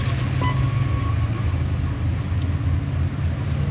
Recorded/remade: recorded